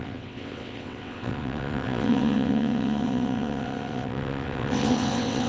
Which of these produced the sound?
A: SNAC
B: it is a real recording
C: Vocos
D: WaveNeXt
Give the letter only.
D